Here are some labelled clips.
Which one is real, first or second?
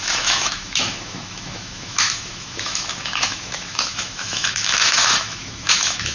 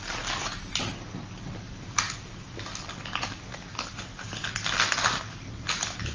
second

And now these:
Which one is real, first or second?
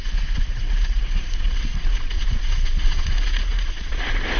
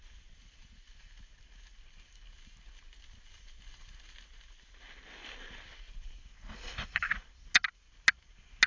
second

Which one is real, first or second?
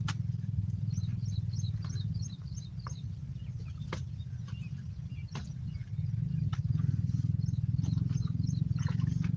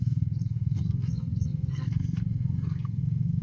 first